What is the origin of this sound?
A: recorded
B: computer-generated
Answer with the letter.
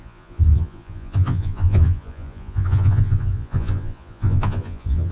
B